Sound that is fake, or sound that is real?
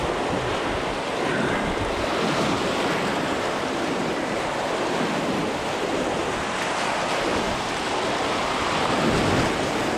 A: fake